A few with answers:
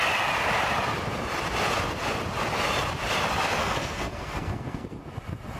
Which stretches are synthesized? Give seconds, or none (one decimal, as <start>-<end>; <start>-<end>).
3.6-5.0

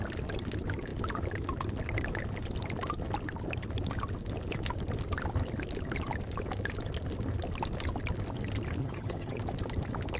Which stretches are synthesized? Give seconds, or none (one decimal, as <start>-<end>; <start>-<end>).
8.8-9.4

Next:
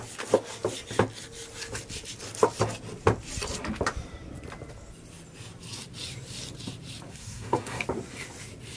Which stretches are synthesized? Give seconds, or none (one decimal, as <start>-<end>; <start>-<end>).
7.1-7.8

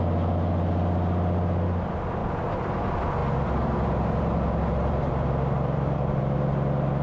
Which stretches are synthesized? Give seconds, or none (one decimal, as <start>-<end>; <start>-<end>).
2.2-2.8; 3.2-6.2

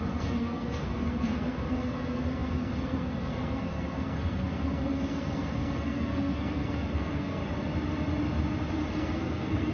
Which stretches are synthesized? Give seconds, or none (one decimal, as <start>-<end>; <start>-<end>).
0.0-7.4; 8.9-9.7